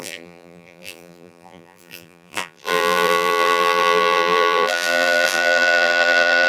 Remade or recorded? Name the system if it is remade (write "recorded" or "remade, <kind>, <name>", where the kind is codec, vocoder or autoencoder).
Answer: remade, vocoder, BigVGAN v2